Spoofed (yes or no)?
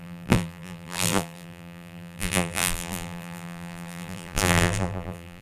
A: yes